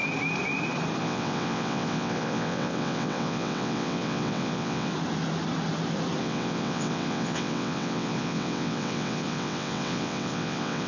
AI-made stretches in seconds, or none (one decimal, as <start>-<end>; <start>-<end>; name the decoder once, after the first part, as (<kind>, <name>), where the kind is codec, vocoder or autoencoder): 1.0-4.9 (vocoder, WaveNeXt); 6.2-10.9